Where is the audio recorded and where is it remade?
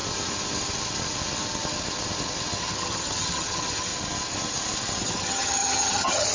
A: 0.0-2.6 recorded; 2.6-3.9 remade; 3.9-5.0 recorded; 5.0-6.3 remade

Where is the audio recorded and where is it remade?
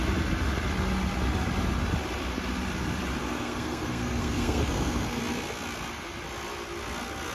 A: 0.0-3.2 recorded; 3.2-5.2 remade; 5.2-7.3 recorded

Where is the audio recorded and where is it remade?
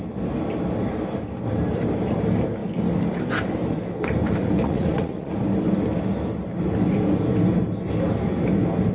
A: 0.0-4.6 recorded; 4.6-5.3 remade; 5.3-8.9 recorded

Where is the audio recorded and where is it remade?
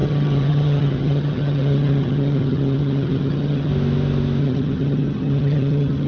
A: 0.0-3.7 remade; 3.7-4.4 recorded; 4.4-6.1 remade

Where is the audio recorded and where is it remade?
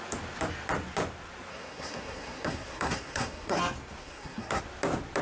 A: 0.0-1.5 recorded; 1.5-3.6 remade; 3.6-4.0 recorded; 4.0-4.6 remade; 4.6-5.2 recorded